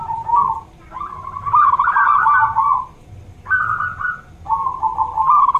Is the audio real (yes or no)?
yes